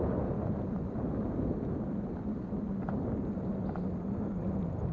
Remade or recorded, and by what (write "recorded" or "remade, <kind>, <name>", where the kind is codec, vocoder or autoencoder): recorded